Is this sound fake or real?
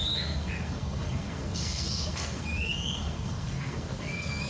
fake